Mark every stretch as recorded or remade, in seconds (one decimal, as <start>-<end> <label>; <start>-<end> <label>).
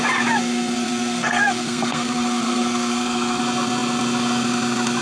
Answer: 0.0-0.4 recorded; 0.4-3.4 remade; 3.4-5.0 recorded